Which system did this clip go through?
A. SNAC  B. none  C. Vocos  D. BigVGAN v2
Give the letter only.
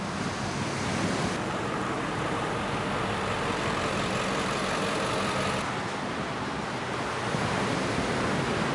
B